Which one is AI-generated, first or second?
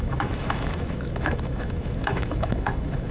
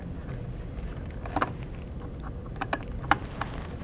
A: first